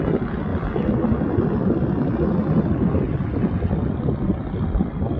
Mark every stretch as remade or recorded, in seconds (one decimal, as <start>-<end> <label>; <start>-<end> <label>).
0.0-5.2 recorded